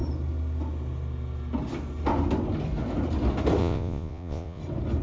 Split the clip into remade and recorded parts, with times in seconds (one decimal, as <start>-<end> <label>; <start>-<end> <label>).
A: 0.0-3.6 recorded; 3.6-4.6 remade; 4.6-5.0 recorded